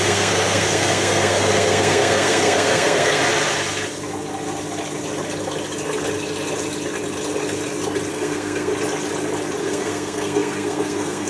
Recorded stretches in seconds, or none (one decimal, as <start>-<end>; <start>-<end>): 3.2-8.1; 8.7-9.6